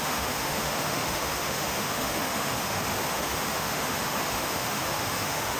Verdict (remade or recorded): remade